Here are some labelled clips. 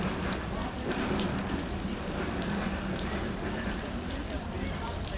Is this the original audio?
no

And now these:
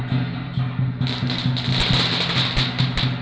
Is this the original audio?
yes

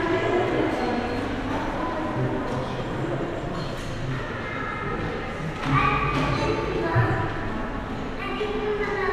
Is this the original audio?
yes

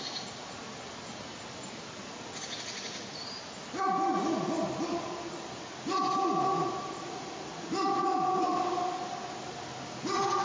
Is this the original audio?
yes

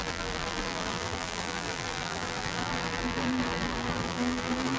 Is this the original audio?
no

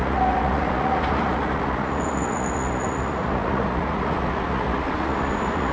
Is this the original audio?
no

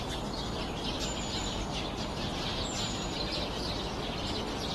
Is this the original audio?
yes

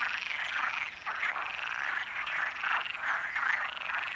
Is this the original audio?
yes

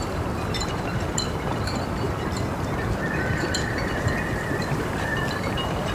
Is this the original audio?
no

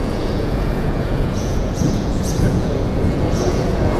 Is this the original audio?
no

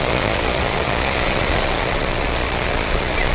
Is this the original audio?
no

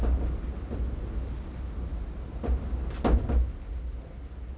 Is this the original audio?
yes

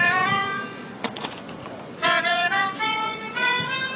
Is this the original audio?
no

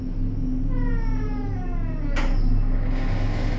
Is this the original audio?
yes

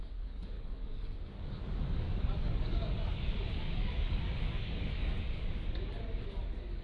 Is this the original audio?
no